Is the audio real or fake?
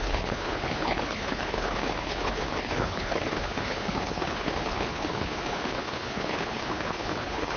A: fake